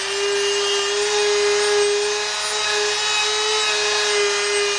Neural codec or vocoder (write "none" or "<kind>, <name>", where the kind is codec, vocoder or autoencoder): none